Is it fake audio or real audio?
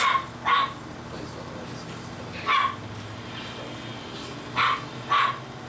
real